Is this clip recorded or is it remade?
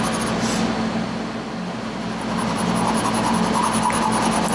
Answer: recorded